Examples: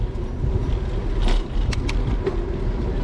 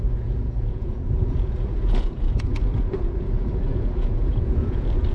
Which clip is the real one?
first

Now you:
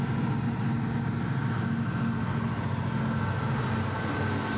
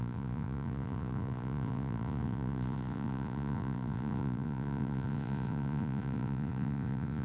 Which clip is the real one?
first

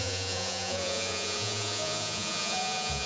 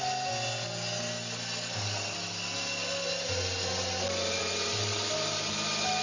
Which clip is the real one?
second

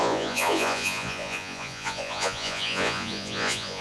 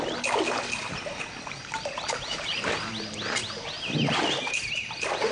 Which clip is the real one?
second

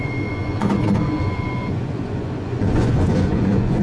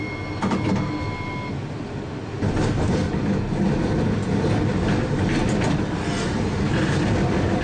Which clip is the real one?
second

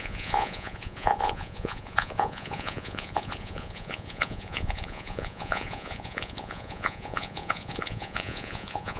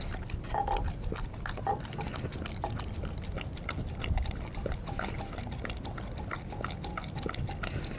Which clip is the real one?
second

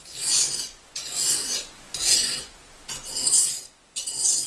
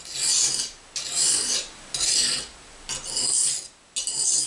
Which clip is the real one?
second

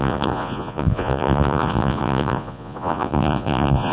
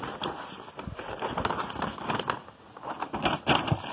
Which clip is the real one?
second